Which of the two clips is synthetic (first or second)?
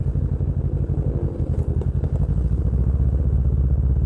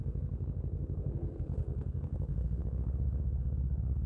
second